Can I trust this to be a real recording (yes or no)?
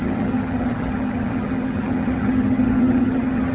no